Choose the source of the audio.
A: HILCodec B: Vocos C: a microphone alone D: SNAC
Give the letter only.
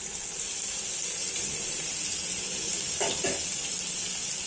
C